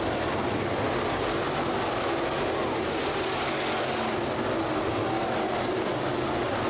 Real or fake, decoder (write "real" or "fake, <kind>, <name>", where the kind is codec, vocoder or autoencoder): real